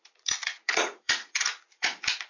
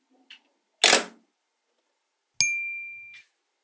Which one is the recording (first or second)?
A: second